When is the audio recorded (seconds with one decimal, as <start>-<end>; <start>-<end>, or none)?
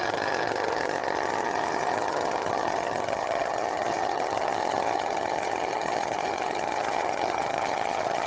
none